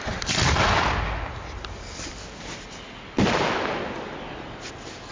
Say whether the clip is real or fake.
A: real